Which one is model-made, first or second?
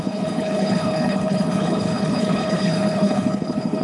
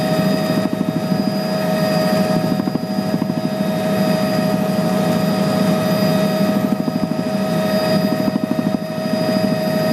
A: first